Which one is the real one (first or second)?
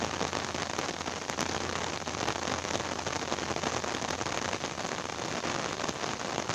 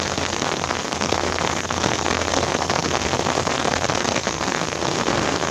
first